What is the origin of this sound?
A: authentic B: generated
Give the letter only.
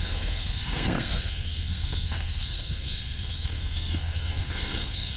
B